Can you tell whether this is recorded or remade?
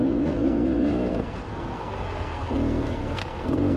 remade